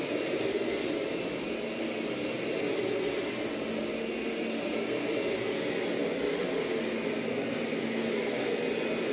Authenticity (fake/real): real